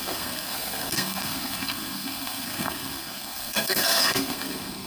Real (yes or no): no